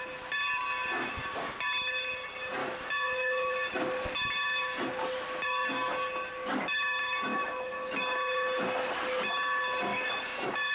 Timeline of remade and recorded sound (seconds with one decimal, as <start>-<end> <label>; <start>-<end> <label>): 0.0-2.6 recorded; 2.6-3.5 remade; 3.5-7.3 recorded; 7.3-7.9 remade; 7.9-9.9 recorded; 9.9-10.7 remade